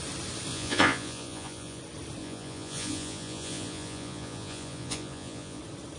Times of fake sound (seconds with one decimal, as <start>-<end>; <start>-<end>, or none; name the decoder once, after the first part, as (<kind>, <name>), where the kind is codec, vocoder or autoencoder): 0.5-1.8 (vocoder, Vocos); 2.2-5.6